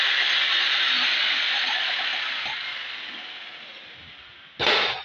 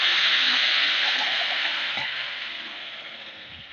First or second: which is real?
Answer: first